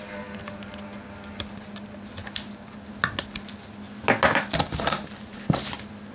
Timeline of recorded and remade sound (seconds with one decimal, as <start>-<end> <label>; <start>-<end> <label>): 0.0-6.1 recorded